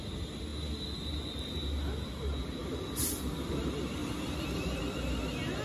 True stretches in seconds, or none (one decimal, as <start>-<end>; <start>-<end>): 0.0-2.6; 3.5-4.0; 4.8-5.6